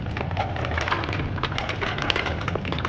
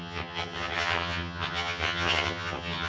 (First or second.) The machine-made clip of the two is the second